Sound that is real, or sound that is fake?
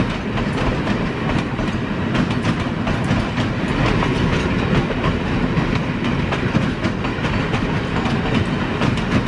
real